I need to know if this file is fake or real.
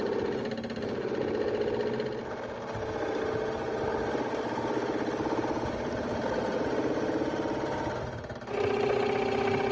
real